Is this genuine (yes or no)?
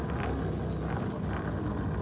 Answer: yes